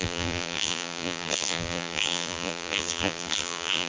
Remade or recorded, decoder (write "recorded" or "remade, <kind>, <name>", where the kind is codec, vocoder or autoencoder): remade, vocoder, BigVGAN v2